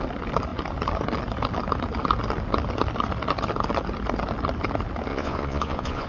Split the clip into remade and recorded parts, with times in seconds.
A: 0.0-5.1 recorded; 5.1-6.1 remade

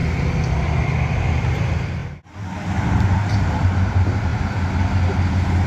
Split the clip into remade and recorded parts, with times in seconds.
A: 0.0-1.0 recorded; 1.0-2.0 remade; 2.0-2.8 recorded; 2.8-4.3 remade; 4.3-5.7 recorded

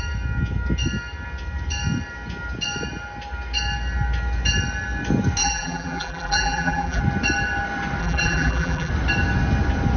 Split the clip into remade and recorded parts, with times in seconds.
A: 0.0-5.4 recorded; 5.4-7.0 remade; 7.0-8.0 recorded; 8.0-8.9 remade; 8.9-10.0 recorded

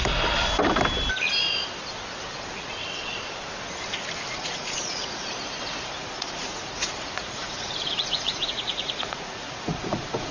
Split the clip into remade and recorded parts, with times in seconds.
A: 0.0-4.3 recorded; 4.3-10.3 remade

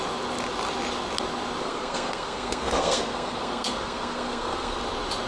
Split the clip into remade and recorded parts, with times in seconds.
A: 0.0-1.6 recorded; 1.6-4.8 remade; 4.8-5.3 recorded

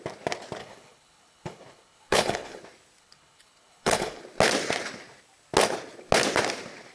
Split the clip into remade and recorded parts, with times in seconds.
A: 0.0-0.6 recorded; 0.6-2.6 remade; 2.6-3.0 recorded; 3.0-4.2 remade; 4.2-6.9 recorded

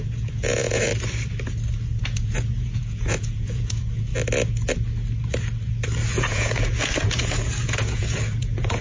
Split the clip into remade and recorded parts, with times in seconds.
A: 0.0-0.9 remade; 0.9-2.0 recorded; 2.0-4.1 remade; 4.1-6.1 recorded; 6.1-8.8 remade